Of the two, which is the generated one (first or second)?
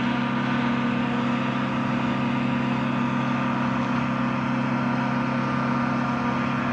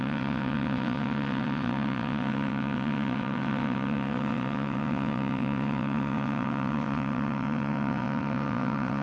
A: second